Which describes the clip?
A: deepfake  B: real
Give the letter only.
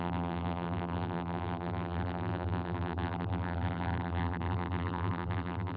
A